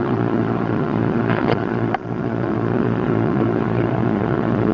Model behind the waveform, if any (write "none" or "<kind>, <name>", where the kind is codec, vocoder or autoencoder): vocoder, Vocos